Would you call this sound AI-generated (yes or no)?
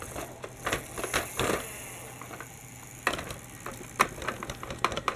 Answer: no